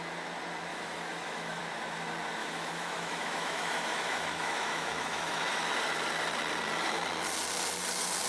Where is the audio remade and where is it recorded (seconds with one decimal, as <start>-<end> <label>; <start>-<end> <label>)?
0.0-0.7 recorded; 0.7-1.6 remade; 1.6-2.4 recorded; 2.4-5.4 remade; 5.4-8.3 recorded